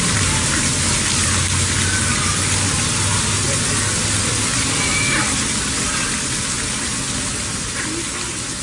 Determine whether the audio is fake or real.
real